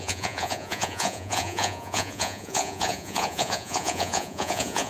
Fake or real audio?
fake